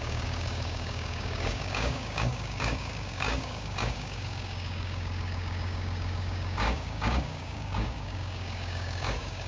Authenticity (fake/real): fake